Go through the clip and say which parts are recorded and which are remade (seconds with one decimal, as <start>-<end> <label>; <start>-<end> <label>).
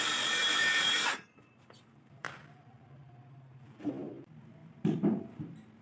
0.0-0.4 recorded; 0.4-3.9 remade; 3.9-4.6 recorded; 4.6-5.8 remade